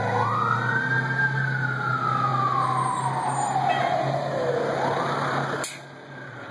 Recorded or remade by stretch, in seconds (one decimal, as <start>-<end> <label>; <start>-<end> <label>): 0.0-6.5 recorded